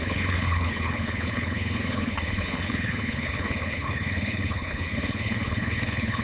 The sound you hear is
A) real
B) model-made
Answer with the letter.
B